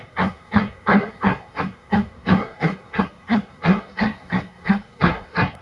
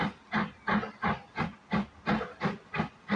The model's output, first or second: first